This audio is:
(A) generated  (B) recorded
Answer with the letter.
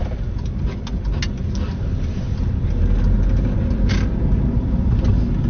B